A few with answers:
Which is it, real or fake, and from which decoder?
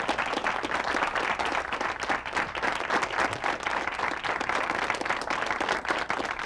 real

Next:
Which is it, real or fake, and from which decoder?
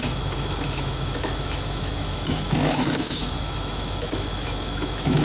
fake, autoencoder, DAC-VAE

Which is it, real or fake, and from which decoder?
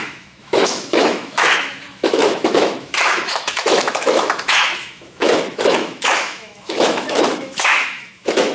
fake, autoencoder, DAC-VAE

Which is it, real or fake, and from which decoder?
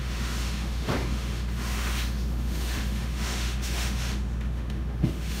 fake, autoencoder, DAC-VAE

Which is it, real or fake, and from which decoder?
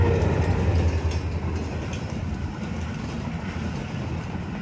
real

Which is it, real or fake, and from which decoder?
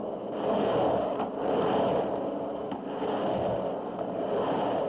real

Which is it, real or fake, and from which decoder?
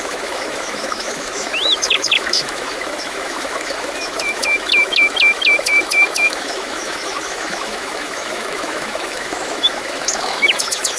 fake, autoencoder, DAC-VAE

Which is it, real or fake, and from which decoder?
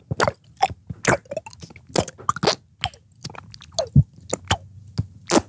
real